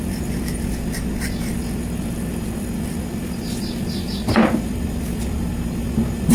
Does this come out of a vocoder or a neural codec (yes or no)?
no